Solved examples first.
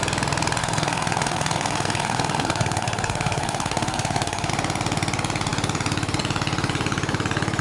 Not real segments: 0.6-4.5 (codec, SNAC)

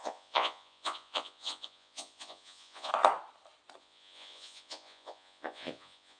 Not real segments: 0.0-2.9 (vocoder, Vocos); 3.8-6.2

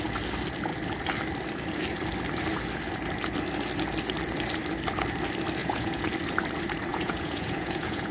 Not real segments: 5.6-6.1 (vocoder, Vocos); 6.9-8.1

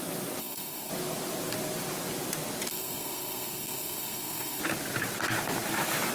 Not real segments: 0.4-0.9 (codec, SNAC); 2.7-4.6